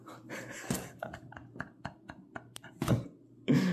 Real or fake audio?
real